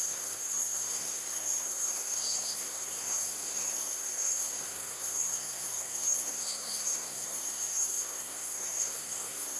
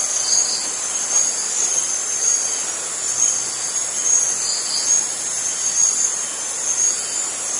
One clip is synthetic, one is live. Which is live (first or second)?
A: second